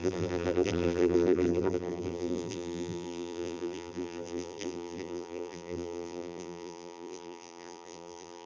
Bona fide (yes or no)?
no